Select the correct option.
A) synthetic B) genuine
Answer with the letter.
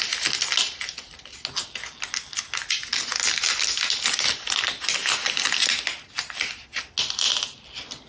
B